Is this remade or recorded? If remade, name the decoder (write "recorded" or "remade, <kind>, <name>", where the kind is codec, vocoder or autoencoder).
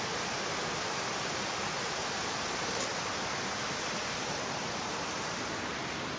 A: recorded